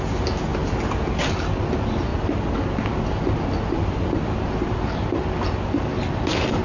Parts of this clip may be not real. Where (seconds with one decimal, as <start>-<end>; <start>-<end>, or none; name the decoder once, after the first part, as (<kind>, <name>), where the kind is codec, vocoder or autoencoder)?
none